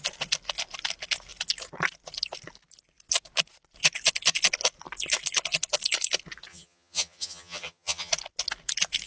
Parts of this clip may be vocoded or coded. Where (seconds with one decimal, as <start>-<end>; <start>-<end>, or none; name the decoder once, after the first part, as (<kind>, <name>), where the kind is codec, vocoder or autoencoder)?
6.5-8.1 (vocoder, HiFi-GAN)